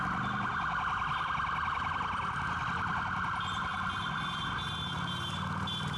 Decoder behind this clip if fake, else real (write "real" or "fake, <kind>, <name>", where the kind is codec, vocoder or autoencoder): real